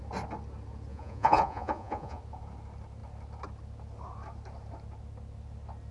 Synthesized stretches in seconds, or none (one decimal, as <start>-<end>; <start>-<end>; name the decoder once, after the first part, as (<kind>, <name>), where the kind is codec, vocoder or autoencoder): 0.9-2.2 (vocoder, Vocos)